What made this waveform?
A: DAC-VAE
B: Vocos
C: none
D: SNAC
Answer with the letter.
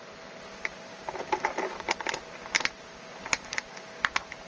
C